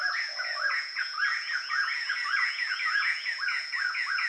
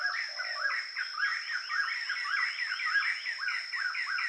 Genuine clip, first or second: second